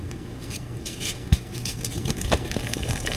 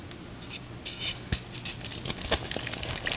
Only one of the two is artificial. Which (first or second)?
first